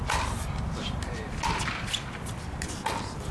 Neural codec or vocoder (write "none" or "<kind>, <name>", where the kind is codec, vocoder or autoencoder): none